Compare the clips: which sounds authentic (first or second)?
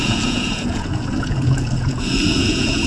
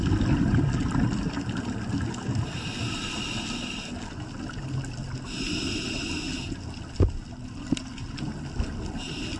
second